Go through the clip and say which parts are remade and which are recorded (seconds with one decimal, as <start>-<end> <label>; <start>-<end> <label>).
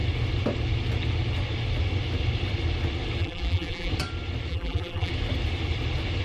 0.0-3.2 recorded; 3.2-3.9 remade; 3.9-4.5 recorded; 4.5-5.1 remade; 5.1-6.2 recorded